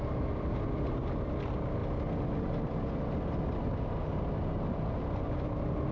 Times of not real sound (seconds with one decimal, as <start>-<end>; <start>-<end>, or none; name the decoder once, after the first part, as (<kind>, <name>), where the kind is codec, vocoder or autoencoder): none